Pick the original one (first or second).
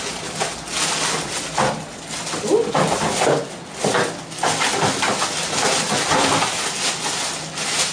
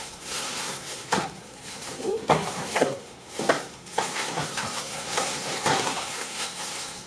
first